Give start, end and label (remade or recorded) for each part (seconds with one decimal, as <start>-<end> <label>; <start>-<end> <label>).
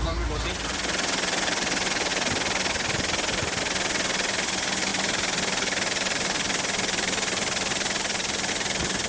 0.0-9.1 recorded